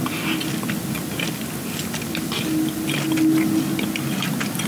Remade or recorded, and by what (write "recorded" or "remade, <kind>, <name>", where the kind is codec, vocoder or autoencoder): recorded